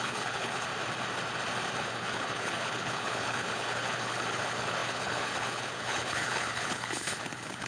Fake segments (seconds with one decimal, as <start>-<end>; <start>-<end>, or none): 0.0-0.7; 1.8-7.7